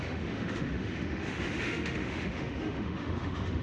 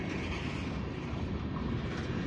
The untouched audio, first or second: second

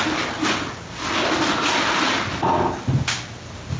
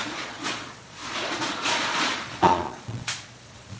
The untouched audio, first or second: first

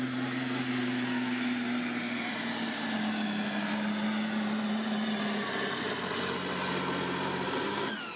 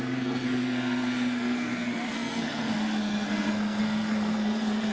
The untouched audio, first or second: first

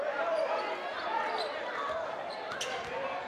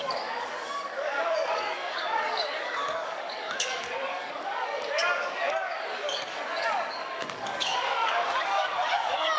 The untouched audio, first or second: first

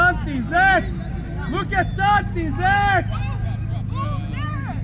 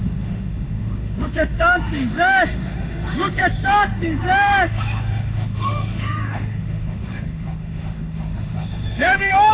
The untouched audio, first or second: first